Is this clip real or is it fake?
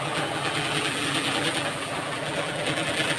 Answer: fake